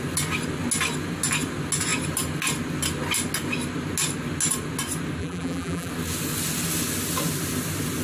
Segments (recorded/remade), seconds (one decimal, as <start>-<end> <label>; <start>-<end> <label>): 0.0-5.2 recorded; 5.2-5.9 remade; 5.9-8.0 recorded